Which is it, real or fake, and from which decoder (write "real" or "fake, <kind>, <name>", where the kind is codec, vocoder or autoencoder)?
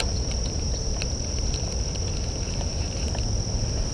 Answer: real